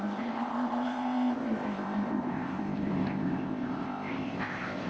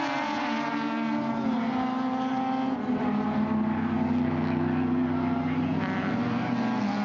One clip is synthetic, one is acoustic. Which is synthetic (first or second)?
first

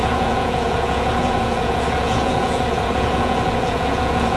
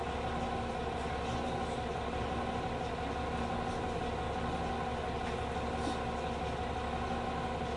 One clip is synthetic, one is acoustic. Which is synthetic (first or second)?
first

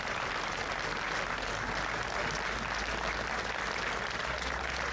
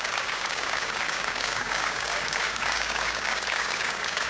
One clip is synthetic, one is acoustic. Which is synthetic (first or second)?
second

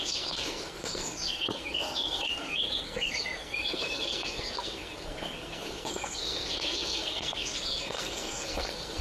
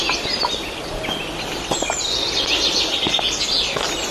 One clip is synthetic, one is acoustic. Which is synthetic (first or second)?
first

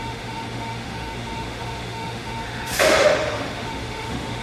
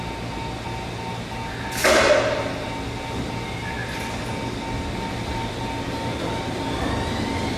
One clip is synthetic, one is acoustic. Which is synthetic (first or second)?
first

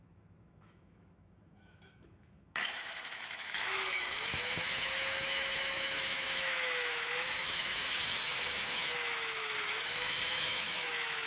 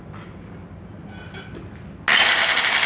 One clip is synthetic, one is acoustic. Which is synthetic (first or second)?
first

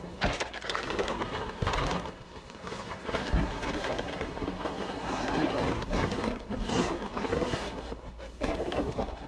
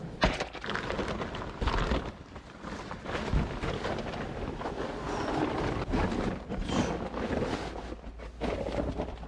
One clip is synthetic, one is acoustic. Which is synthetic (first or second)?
first